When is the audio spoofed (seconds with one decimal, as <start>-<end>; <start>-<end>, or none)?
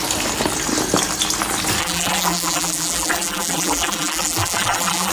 1.8-5.1